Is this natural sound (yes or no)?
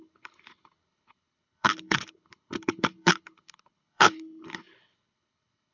no